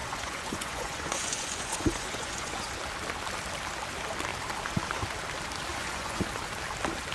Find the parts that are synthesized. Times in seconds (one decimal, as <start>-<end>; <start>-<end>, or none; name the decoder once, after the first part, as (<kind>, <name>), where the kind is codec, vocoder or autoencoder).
0.0-2.7 (vocoder, Vocos); 5.7-6.2